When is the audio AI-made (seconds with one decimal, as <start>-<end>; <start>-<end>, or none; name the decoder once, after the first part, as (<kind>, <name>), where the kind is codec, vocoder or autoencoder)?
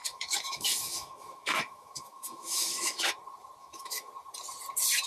0.0-3.1 (autoencoder, DAC-VAE); 3.6-4.1